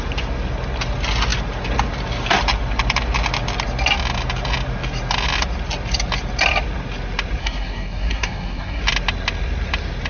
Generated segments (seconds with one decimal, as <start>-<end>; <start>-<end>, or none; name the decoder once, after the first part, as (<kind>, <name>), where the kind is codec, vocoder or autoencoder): 7.4-8.8 (codec, SNAC)